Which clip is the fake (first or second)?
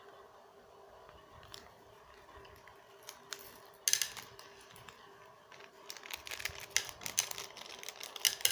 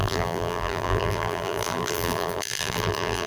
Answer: second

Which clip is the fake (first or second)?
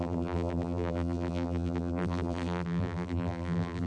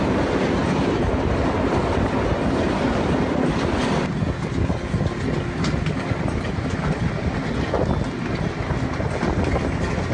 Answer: first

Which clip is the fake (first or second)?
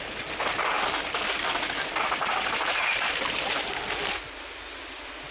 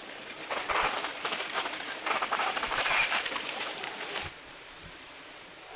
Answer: second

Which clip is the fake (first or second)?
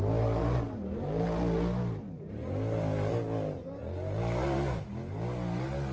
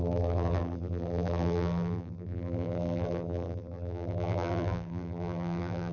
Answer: second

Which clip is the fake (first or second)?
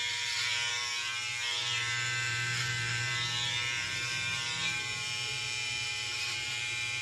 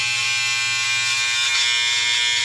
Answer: first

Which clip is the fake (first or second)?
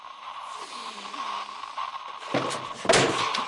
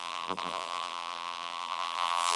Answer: second